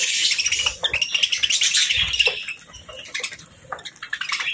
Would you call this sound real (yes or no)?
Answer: yes